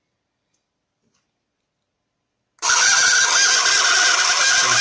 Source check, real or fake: real